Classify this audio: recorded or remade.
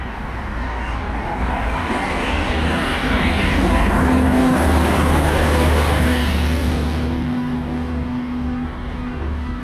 remade